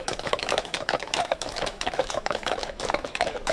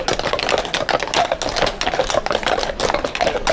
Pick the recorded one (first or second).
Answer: second